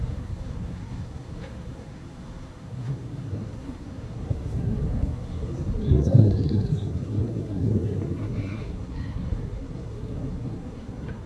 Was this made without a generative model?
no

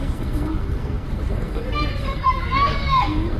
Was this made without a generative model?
no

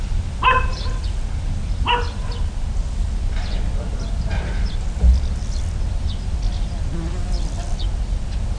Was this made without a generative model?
yes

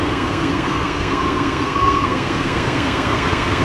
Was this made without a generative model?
no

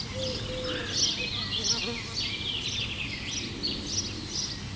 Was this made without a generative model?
yes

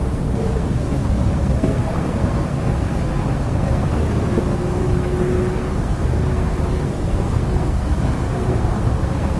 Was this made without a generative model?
no